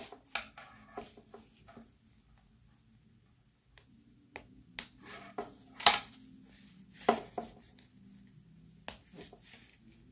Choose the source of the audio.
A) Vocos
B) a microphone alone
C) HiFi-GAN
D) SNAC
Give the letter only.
B